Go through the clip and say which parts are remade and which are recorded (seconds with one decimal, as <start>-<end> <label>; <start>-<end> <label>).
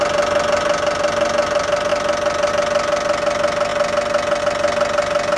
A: 0.0-5.4 recorded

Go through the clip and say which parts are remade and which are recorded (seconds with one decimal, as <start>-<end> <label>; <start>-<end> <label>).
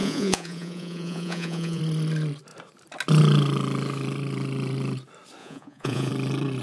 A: 0.0-1.8 remade; 1.8-5.4 recorded; 5.4-6.1 remade; 6.1-6.6 recorded